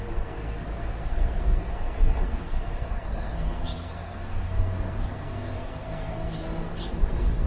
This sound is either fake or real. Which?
fake